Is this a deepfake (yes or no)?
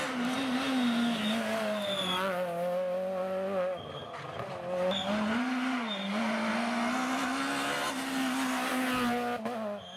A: no